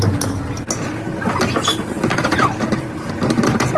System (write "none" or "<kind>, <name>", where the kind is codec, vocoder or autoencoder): none